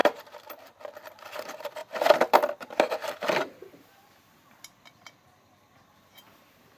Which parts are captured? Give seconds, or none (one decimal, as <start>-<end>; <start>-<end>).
0.0-1.1; 1.8-3.1